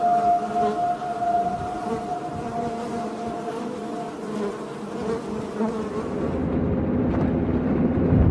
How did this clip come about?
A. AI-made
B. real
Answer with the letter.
B